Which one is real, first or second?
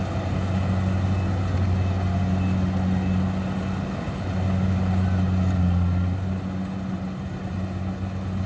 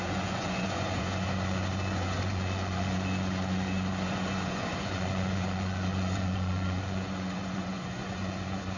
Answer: first